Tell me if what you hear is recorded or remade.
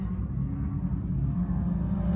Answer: recorded